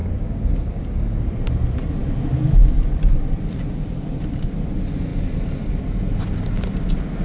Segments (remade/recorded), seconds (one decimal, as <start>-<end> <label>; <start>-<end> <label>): 0.0-1.2 remade; 1.2-7.2 recorded